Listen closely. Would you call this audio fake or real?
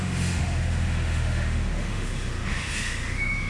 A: fake